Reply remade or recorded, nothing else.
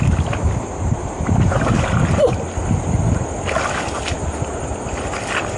recorded